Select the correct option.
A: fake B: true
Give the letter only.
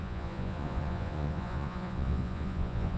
A